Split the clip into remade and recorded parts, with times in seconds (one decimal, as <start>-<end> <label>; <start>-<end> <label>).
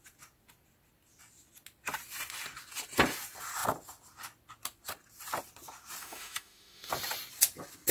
0.0-6.0 recorded; 6.0-6.9 remade; 6.9-7.9 recorded